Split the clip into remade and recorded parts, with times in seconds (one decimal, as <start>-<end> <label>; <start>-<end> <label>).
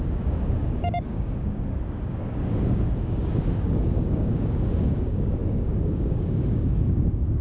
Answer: 0.0-7.4 remade